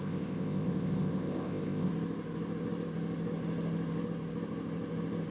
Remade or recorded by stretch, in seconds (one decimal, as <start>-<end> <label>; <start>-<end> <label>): 0.0-1.9 remade; 1.9-5.3 recorded